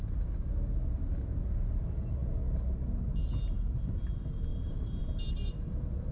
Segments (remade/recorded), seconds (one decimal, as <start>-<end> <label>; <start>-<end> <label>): 0.0-4.5 recorded; 4.5-5.0 remade; 5.0-6.1 recorded